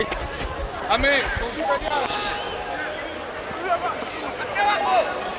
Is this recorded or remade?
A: recorded